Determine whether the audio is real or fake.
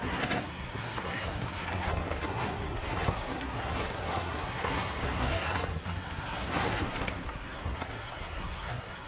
fake